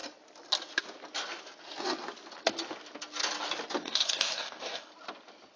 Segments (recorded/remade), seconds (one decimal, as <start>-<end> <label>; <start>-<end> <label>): 0.0-3.8 recorded; 3.8-4.9 remade; 4.9-5.6 recorded